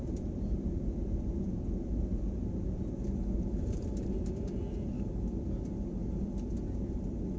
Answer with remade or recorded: recorded